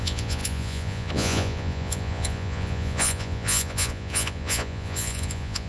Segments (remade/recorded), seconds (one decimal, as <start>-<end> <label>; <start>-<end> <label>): 0.0-5.7 remade